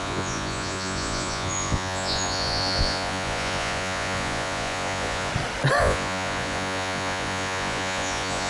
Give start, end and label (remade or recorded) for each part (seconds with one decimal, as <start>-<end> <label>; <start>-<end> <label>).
0.0-5.3 remade; 5.3-5.8 recorded; 5.8-8.5 remade